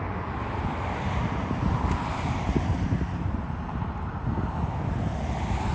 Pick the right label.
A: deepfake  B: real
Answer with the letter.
B